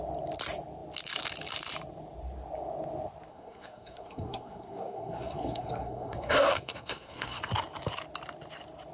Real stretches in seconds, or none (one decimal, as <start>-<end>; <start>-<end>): 0.0-3.3; 7.4-8.9